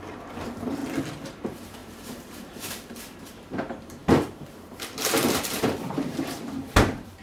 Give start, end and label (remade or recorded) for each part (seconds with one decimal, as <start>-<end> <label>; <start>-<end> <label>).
0.0-0.8 remade; 0.8-1.3 recorded; 1.3-7.2 remade